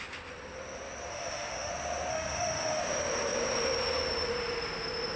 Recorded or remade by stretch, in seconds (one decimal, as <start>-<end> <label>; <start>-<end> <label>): 0.0-1.1 recorded; 1.1-1.7 remade; 1.7-2.1 recorded; 2.1-2.8 remade; 2.8-5.2 recorded